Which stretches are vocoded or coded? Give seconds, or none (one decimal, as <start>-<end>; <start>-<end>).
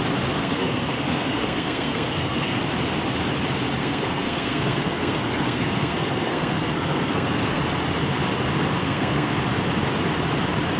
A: 0.4-2.6; 3.8-7.6; 8.8-9.3